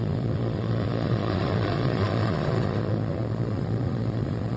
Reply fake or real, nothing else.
fake